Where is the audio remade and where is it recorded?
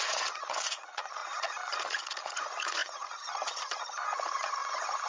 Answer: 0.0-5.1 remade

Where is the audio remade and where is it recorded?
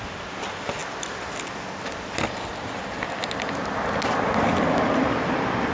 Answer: 0.0-5.7 recorded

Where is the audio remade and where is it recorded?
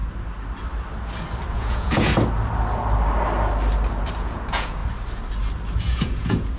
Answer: 0.0-1.5 recorded; 1.5-2.1 remade; 2.1-4.2 recorded; 4.2-4.8 remade; 4.8-5.8 recorded; 5.8-6.6 remade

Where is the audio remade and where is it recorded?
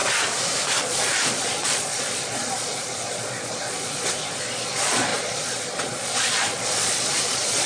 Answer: 0.0-0.8 recorded; 0.8-7.7 remade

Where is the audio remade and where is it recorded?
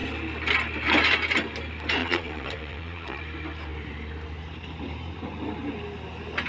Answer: 0.0-2.0 recorded; 2.0-3.2 remade; 3.2-6.5 recorded